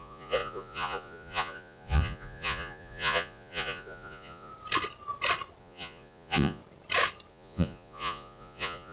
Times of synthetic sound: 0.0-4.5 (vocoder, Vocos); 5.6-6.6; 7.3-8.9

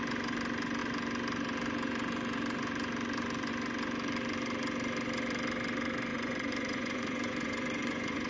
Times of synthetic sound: 6.1-8.3 (vocoder, Vocos)

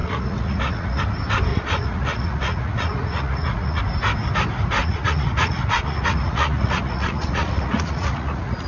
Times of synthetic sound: 0.0-1.0 (vocoder, Vocos); 1.5-3.8; 4.8-8.7

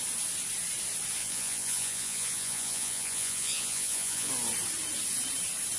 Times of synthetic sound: 1.2-4.3 (vocoder, Vocos)

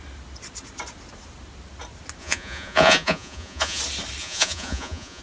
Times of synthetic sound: 2.2-3.8 (vocoder, Vocos); 4.2-5.2

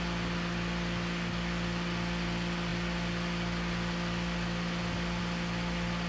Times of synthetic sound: none